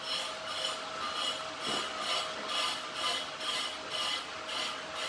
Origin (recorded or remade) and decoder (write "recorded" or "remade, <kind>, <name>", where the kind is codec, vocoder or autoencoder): recorded